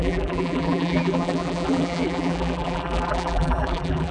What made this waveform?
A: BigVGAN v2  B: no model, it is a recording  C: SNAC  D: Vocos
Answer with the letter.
A